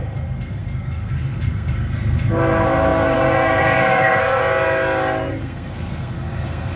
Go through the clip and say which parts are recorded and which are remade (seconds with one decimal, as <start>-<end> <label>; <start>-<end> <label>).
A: 0.0-4.4 remade; 4.4-5.3 recorded; 5.3-6.8 remade